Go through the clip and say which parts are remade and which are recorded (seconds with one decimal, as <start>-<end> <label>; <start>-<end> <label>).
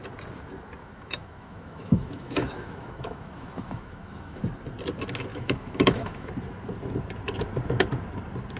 0.0-0.8 recorded; 0.8-4.4 remade; 4.4-5.3 recorded; 5.3-6.3 remade; 6.3-8.6 recorded